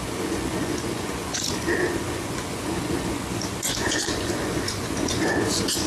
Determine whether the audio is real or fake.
fake